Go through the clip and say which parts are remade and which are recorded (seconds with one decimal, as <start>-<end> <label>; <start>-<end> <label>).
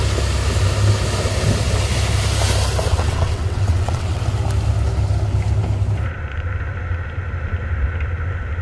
0.0-2.9 recorded; 2.9-4.2 remade; 4.2-8.6 recorded